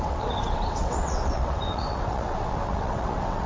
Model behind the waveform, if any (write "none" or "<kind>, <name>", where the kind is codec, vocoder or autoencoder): vocoder, WaveNeXt